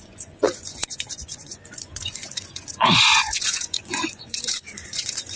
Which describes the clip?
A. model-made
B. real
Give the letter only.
A